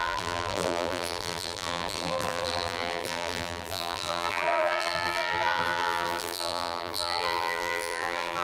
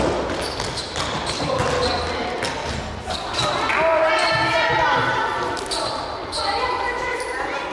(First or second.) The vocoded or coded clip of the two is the first